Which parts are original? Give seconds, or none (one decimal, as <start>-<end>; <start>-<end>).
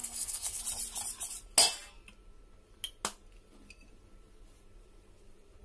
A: 0.6-5.6